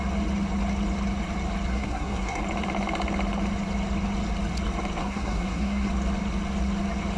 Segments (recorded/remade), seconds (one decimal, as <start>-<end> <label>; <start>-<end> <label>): 0.0-1.7 recorded; 1.7-2.4 remade; 2.4-5.0 recorded; 5.0-5.9 remade; 5.9-7.2 recorded